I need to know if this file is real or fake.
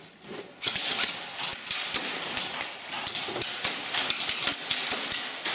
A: real